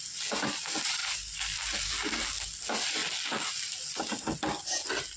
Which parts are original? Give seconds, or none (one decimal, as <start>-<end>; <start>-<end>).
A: 0.0-5.2